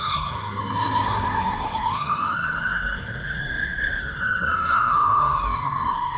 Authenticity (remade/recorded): remade